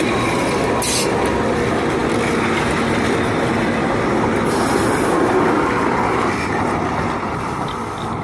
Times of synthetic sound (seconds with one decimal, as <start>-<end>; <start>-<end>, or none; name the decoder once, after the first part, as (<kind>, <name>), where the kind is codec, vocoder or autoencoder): none